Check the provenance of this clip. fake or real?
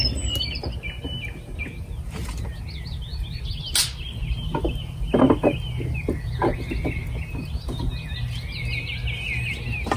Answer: real